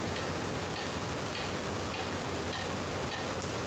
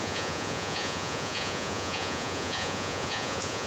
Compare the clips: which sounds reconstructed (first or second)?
second